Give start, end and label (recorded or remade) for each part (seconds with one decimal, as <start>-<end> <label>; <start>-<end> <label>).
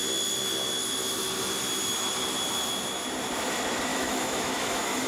0.0-3.9 recorded; 3.9-5.1 remade